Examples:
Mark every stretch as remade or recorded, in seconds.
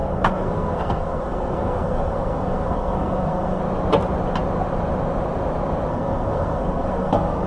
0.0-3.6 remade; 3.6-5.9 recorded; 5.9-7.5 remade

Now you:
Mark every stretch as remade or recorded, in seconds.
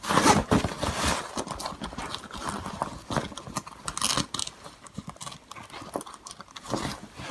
0.0-7.3 recorded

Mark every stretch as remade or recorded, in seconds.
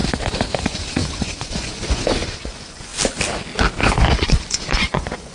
0.0-0.6 recorded; 0.6-2.9 remade; 2.9-4.0 recorded; 4.0-5.3 remade